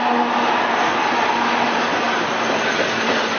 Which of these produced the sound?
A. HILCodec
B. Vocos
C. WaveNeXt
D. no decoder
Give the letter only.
D